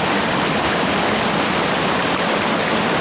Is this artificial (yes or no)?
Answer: no